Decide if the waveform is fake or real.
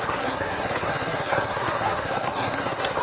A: fake